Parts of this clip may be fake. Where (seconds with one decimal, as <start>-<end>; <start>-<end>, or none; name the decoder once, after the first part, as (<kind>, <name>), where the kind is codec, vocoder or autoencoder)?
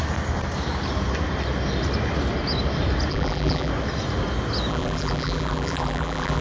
3.1-3.7 (vocoder, BigVGAN v2); 4.7-6.4